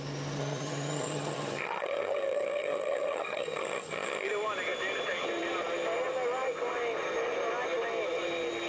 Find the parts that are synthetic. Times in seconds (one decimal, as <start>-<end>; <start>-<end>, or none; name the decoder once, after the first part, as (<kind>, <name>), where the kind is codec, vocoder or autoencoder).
0.4-4.3 (vocoder, HiFi-GAN)